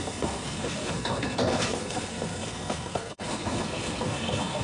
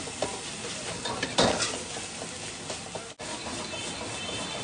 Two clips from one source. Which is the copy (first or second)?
first